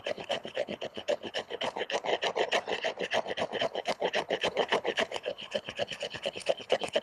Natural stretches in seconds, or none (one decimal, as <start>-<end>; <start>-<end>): 2.1-3.6